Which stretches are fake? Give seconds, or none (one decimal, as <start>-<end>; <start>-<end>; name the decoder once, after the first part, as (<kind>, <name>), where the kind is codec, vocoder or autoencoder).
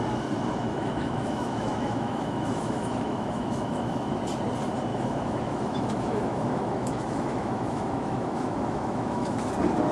0.6-4.2 (autoencoder, DAC-VAE); 4.9-9.5